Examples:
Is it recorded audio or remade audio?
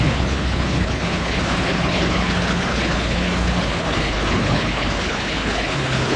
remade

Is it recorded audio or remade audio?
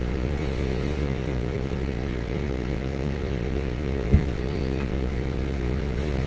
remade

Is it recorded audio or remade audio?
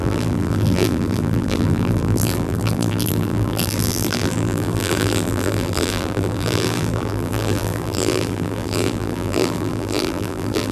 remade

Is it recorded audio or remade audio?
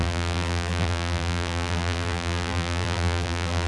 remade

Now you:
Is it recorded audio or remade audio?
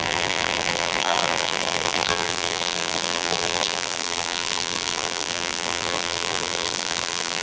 remade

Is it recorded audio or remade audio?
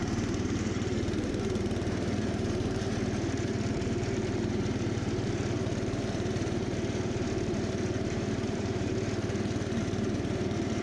remade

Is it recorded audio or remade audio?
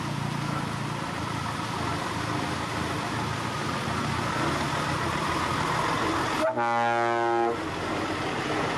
recorded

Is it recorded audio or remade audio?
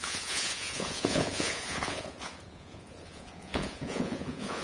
remade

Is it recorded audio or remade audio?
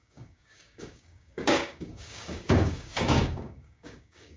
remade